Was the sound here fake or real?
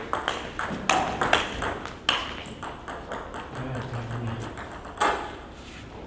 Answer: real